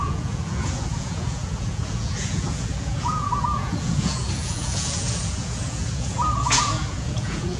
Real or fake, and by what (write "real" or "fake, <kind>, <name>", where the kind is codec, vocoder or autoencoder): fake, vocoder, Vocos